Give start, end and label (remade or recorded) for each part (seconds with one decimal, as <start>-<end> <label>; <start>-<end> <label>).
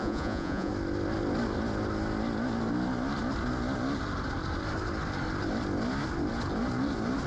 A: 0.0-0.7 remade; 0.7-7.3 recorded